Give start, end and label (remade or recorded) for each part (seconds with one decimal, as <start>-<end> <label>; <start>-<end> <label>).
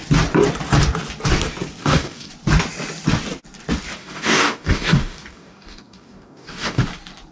0.0-1.8 recorded; 1.8-2.3 remade; 2.3-4.0 recorded; 4.0-6.8 remade; 6.8-7.3 recorded